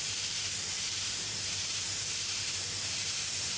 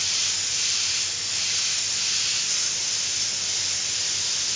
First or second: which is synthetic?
first